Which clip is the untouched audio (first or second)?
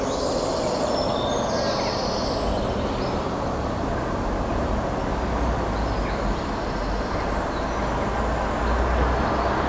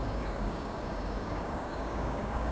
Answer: first